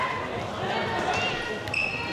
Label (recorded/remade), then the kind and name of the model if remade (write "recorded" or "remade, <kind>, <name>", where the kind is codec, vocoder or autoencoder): recorded